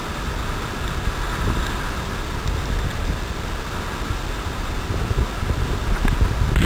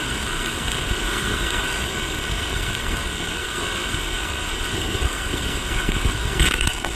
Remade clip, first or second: second